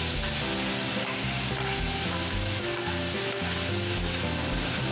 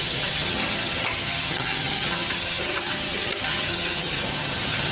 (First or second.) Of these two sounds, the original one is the first